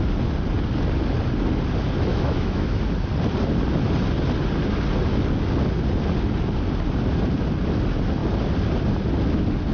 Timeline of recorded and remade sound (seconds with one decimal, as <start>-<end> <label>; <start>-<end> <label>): 0.0-2.1 recorded; 2.1-2.8 remade; 2.8-9.7 recorded